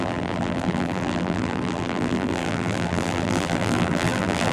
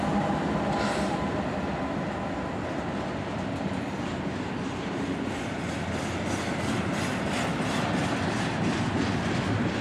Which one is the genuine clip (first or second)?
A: second